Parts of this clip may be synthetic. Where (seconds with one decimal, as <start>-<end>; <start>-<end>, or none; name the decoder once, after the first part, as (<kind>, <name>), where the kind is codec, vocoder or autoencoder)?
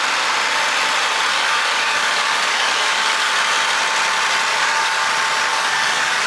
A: 1.3-3.3 (codec, DAC); 4.5-5.1; 5.5-6.3